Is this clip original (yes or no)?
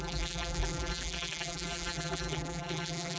no